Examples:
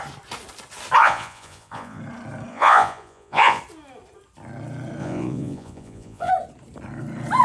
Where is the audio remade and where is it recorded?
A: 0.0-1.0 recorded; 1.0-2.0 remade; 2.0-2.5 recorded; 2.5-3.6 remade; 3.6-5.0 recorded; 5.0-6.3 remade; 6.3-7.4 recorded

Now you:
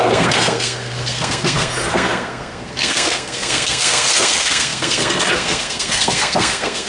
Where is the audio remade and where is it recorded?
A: 0.0-6.9 remade

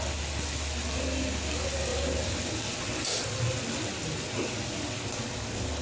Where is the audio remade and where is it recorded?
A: 0.0-5.8 recorded

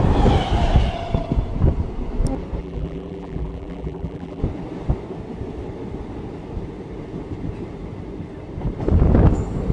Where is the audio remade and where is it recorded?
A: 0.0-2.6 recorded; 2.6-4.4 remade; 4.4-9.7 recorded

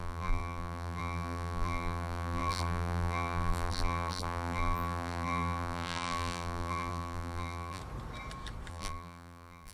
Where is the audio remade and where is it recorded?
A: 0.0-7.8 remade; 7.8-8.7 recorded; 8.7-9.7 remade

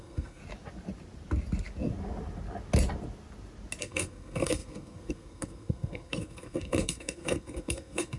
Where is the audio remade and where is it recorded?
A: 0.0-0.4 remade; 0.4-3.8 recorded; 3.8-8.2 remade

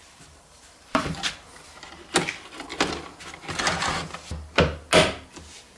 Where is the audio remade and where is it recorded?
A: 0.0-1.3 remade; 1.3-5.8 recorded

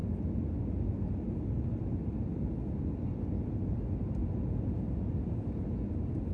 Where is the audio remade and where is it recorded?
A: 0.0-6.3 recorded